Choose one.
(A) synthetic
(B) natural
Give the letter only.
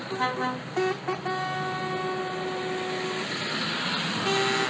B